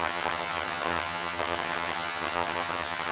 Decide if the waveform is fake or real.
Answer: fake